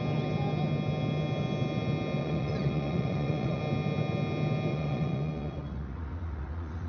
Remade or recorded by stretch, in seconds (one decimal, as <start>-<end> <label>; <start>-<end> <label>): 0.0-2.2 recorded; 2.2-3.6 remade; 3.6-4.7 recorded; 4.7-6.9 remade